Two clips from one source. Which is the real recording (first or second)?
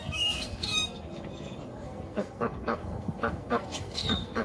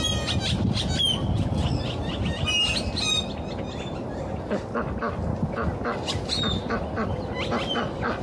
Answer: second